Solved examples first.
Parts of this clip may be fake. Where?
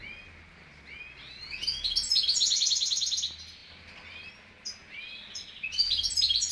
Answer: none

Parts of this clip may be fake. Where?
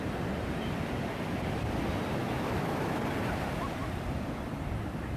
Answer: 2.2-3.0 (autoencoder, DAC-VAE)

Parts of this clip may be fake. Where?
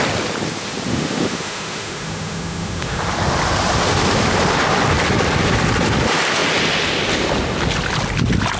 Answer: 0.9-3.0 (autoencoder, DAC-VAE)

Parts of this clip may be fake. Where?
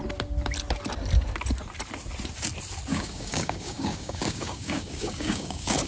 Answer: 2.9-5.9 (codec, DAC)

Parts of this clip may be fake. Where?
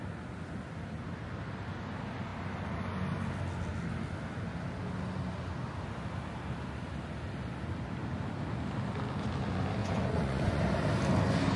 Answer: 9.8-10.6 (vocoder, Vocos)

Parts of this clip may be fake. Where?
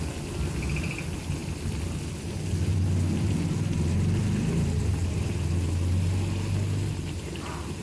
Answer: none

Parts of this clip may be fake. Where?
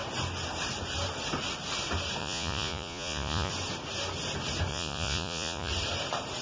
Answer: 2.2-3.5 (vocoder, Vocos); 4.7-5.7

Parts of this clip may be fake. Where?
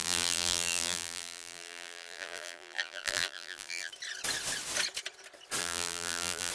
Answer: 0.0-3.9 (vocoder, BigVGAN v2); 5.6-6.5